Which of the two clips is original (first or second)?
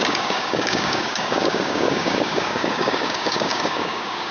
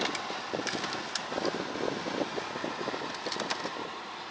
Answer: second